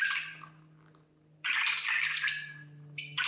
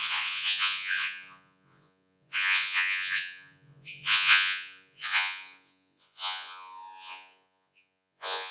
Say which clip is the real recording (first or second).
first